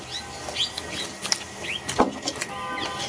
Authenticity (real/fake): real